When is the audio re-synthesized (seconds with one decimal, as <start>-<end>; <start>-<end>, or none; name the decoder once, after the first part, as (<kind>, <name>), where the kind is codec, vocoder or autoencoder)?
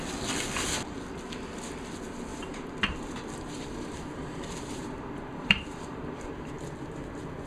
2.3-6.3 (vocoder, BigVGAN v2)